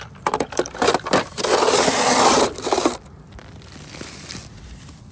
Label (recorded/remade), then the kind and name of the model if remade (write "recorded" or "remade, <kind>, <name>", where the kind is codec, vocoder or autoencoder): remade, vocoder, BigVGAN v2